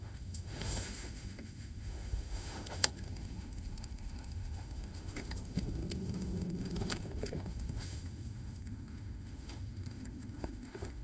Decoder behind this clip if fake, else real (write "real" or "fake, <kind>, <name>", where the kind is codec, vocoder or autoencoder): fake, autoencoder, DAC-VAE